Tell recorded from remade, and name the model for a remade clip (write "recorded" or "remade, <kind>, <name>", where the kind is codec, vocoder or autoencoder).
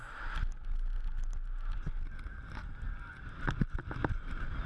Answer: recorded